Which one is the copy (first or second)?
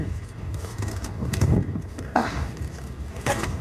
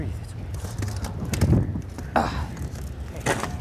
first